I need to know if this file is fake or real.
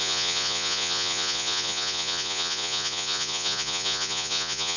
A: fake